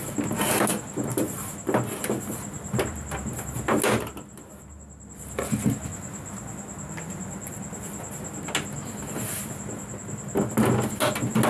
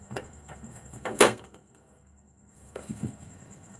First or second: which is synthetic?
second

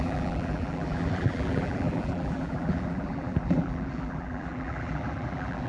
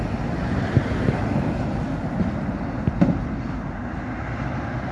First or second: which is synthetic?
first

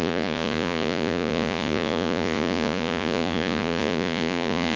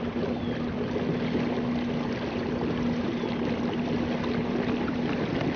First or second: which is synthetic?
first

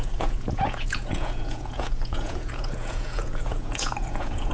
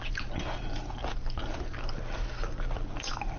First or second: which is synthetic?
first